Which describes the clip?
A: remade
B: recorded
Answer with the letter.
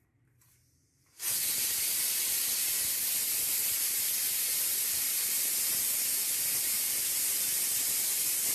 A